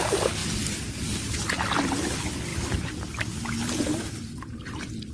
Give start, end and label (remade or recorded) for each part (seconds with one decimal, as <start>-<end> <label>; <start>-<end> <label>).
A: 0.0-5.1 recorded